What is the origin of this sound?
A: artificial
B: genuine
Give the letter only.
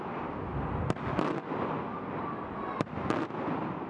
B